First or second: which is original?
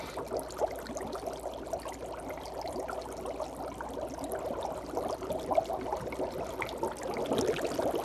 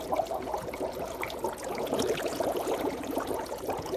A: first